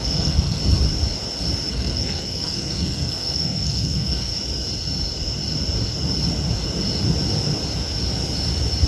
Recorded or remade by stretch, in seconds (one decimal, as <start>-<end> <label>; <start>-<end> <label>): 0.0-0.6 remade; 0.6-1.7 recorded; 1.7-4.3 remade; 4.3-8.9 recorded